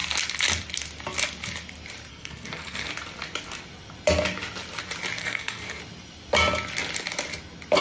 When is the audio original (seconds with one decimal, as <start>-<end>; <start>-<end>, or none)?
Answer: 0.0-2.1; 2.9-5.2; 5.8-7.8